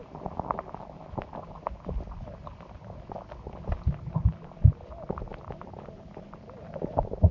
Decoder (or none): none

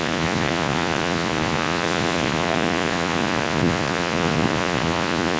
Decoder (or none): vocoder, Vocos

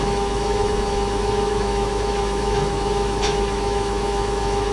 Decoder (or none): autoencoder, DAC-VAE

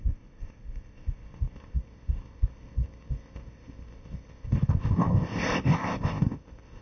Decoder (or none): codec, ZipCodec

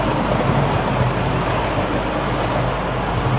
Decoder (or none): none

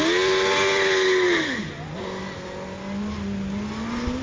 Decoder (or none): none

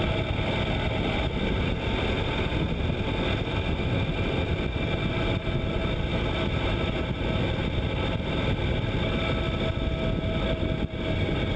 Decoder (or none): none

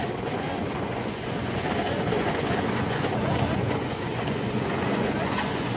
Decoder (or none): vocoder, Vocos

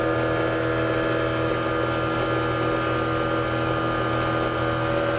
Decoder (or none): none